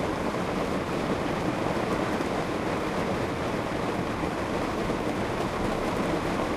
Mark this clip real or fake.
real